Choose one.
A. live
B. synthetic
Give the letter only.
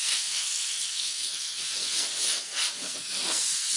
B